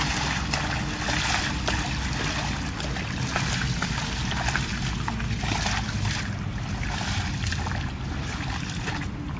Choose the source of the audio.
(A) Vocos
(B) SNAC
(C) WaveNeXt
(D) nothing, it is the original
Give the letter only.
D